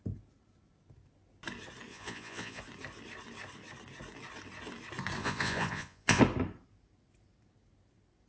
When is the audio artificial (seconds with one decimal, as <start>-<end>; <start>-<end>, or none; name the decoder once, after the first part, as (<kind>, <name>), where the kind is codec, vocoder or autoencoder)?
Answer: 1.9-2.6 (vocoder, Vocos); 5.2-6.2